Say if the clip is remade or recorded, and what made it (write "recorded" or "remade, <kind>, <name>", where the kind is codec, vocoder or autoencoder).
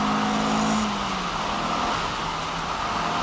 recorded